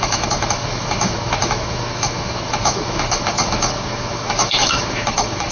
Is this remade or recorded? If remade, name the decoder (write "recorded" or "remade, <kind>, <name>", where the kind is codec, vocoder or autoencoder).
remade, autoencoder, DAC-VAE